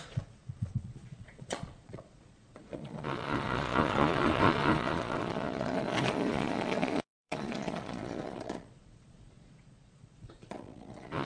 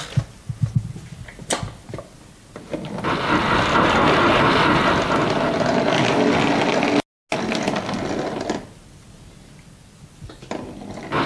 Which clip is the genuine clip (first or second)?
second